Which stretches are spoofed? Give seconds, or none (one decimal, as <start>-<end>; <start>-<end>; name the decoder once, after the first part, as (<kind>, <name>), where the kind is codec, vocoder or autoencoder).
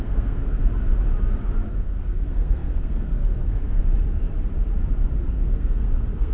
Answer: 0.0-0.6 (codec, SNAC); 1.7-3.8; 5.3-6.3